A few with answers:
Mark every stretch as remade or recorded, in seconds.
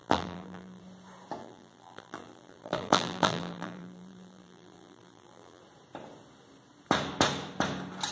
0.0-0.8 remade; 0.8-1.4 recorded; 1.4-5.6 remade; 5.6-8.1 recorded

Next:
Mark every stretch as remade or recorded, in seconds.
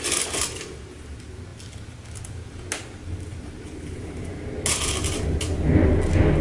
0.0-3.3 recorded; 3.3-4.2 remade; 4.2-6.4 recorded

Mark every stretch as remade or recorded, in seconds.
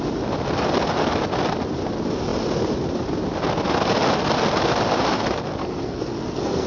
0.0-5.6 recorded; 5.6-6.7 remade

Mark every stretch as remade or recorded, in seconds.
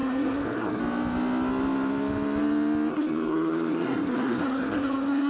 0.0-0.8 remade; 0.8-2.9 recorded; 2.9-5.3 remade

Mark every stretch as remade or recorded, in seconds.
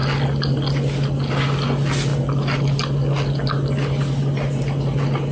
0.0-5.3 recorded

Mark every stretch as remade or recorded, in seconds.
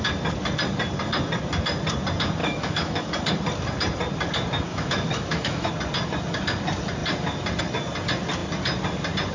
0.0-2.4 recorded; 2.4-3.1 remade; 3.1-4.7 recorded; 4.7-5.7 remade; 5.7-9.3 recorded